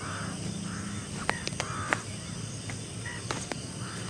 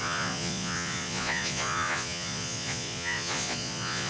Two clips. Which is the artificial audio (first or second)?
second